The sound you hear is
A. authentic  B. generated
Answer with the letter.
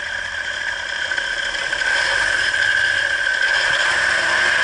B